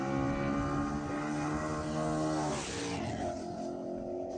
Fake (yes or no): no